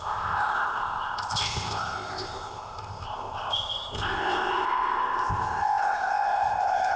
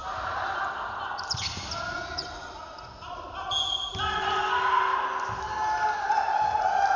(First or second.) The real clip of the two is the second